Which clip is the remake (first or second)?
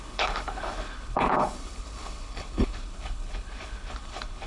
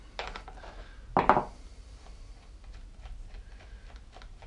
first